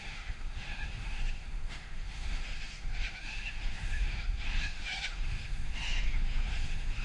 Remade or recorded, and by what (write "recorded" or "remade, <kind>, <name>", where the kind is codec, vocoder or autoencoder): remade, autoencoder, DAC-VAE